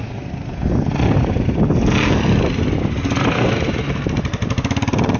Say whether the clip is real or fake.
real